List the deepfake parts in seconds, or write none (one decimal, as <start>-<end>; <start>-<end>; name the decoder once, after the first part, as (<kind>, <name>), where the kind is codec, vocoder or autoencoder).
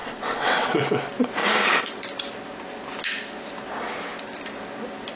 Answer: 0.0-0.7 (vocoder, WaveNeXt)